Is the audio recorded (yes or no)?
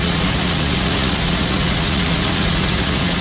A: no